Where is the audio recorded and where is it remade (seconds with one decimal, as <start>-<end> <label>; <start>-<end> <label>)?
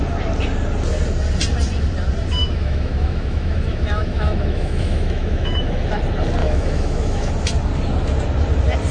0.0-2.4 recorded; 2.4-5.9 remade; 5.9-6.4 recorded; 6.4-7.3 remade; 7.3-8.9 recorded